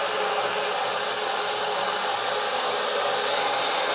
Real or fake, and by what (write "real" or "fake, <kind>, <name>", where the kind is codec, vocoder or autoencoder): real